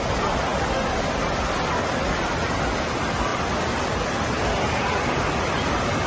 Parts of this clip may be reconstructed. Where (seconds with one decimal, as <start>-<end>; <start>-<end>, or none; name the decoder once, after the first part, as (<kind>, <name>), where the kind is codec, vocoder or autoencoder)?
none